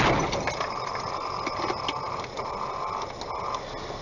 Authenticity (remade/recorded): recorded